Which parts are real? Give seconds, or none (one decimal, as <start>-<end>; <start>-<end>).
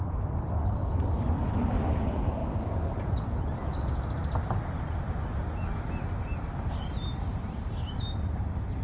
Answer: 1.3-8.8